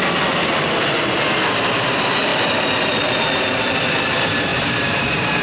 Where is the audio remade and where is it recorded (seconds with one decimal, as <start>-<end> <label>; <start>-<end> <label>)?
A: 0.0-5.4 remade